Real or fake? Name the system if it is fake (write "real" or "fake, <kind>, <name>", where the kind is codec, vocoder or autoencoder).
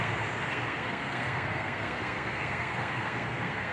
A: fake, codec, SNAC